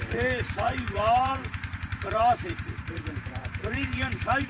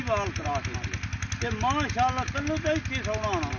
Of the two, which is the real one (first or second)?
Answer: second